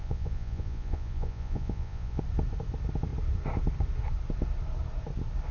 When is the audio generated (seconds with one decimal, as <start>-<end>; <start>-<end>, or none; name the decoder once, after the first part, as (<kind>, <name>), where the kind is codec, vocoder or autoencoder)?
0.0-2.2 (vocoder, Vocos)